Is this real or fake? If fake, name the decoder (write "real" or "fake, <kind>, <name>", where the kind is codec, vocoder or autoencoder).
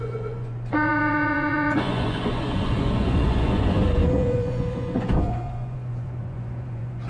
fake, vocoder, Vocos